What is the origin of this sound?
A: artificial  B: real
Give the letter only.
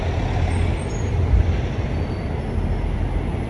B